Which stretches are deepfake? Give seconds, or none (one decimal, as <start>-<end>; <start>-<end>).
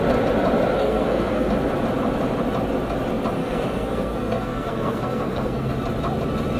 0.8-1.5; 3.4-5.7